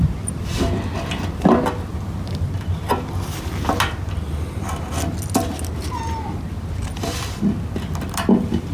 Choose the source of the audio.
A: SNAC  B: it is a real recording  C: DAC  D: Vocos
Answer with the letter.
B